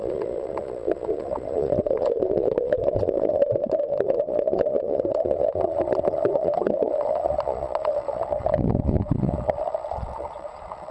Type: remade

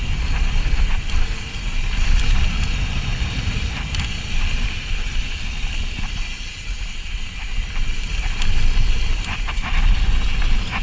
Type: recorded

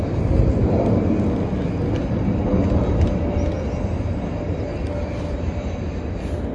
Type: recorded